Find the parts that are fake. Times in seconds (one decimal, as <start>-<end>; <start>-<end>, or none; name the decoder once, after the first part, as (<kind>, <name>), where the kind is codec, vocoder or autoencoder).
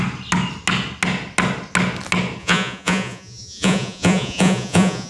2.4-5.1 (vocoder, Vocos)